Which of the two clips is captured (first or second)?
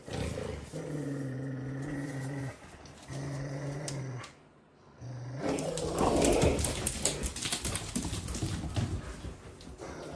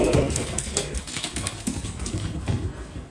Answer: first